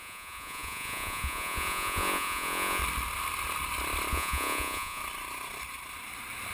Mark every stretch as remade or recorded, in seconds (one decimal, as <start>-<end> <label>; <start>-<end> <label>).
0.0-2.8 remade; 2.8-4.1 recorded; 4.1-5.0 remade; 5.0-6.5 recorded